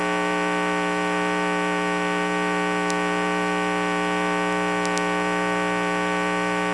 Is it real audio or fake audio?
real